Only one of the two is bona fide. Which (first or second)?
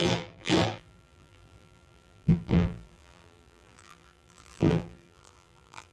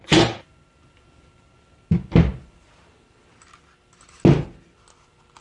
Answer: second